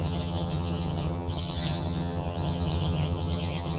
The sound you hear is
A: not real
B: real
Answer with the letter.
A